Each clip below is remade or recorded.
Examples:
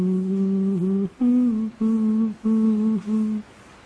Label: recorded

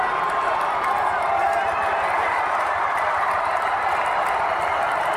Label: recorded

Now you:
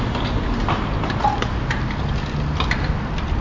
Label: recorded